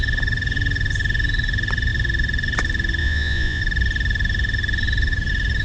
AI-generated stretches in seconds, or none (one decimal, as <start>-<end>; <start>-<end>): 3.0-3.6